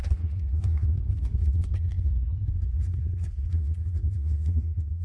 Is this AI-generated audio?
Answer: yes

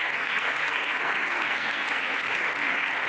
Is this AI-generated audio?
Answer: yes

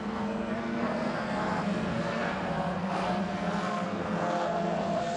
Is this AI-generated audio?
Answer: yes